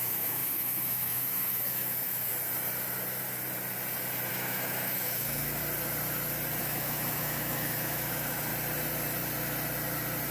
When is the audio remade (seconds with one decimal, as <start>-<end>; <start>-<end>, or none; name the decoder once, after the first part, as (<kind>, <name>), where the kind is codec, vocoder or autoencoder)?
0.0-2.3 (autoencoder, DAC-VAE); 4.3-5.6; 6.6-8.5